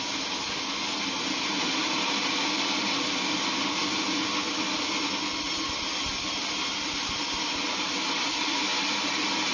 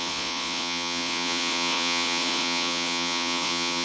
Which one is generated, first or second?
second